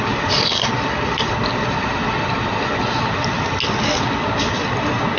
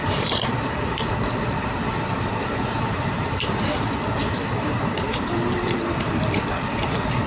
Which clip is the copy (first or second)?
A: second